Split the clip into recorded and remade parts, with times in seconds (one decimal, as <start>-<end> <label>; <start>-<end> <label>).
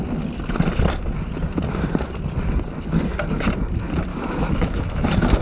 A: 0.0-4.1 recorded; 4.1-5.4 remade